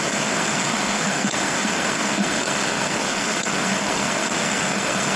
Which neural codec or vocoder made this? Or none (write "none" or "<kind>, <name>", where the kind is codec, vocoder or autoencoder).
codec, SNAC